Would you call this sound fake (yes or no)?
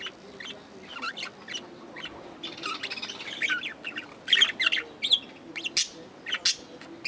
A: no